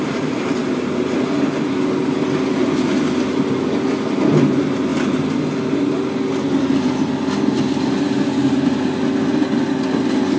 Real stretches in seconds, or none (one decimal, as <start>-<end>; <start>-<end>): 0.0-10.4